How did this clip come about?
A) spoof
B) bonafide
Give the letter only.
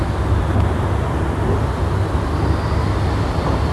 B